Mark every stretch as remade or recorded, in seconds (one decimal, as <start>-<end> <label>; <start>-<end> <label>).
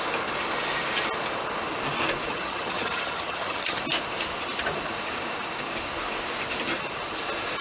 0.0-2.3 recorded; 2.3-3.8 remade; 3.8-7.6 recorded